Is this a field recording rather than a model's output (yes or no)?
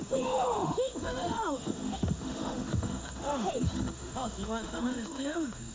no